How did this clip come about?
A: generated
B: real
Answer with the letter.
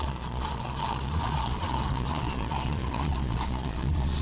A